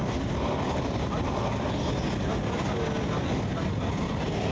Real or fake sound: real